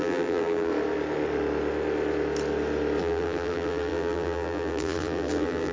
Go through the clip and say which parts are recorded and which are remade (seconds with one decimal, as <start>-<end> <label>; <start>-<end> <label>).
0.0-0.7 remade; 0.7-3.0 recorded; 3.0-5.7 remade